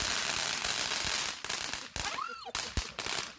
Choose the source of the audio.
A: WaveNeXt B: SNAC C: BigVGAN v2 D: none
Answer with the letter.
D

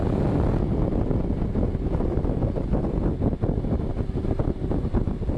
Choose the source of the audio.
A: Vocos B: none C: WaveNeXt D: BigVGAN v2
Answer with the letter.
B